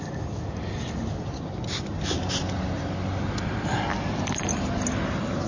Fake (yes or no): no